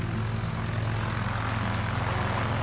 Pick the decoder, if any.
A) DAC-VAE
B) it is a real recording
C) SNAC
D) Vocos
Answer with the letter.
B